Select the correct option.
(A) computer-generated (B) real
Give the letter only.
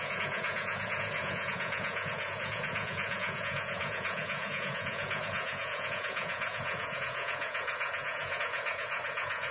A